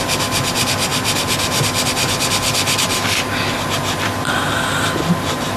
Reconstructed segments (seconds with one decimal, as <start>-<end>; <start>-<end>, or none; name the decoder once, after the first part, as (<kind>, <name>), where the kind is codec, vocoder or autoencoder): none